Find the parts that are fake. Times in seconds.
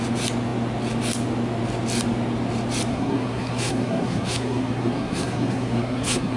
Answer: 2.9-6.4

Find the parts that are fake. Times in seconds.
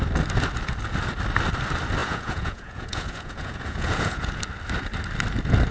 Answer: 2.0-4.4